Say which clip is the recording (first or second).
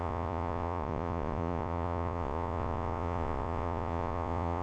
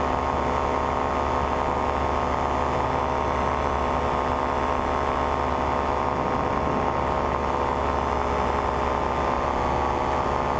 second